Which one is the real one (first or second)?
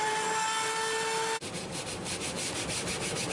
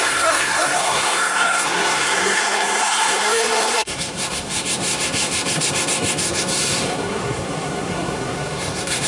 first